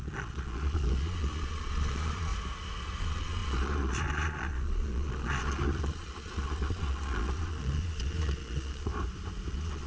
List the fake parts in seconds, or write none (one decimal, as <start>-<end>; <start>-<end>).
0.0-2.3; 3.0-8.9; 9.5-9.9